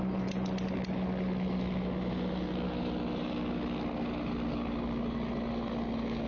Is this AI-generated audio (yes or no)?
no